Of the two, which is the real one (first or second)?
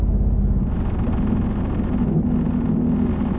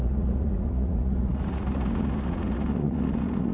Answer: first